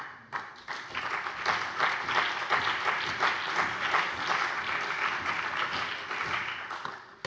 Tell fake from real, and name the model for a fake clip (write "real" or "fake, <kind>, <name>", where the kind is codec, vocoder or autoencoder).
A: real